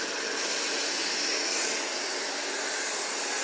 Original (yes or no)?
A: yes